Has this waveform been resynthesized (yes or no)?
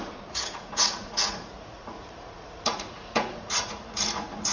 yes